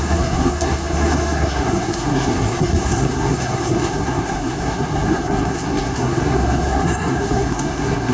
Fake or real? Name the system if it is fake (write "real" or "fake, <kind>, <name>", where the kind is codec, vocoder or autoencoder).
fake, codec, SNAC